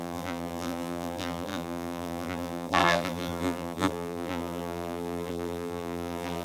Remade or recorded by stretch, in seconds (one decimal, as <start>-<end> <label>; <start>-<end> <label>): 0.0-6.4 remade